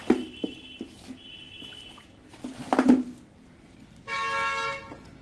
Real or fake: real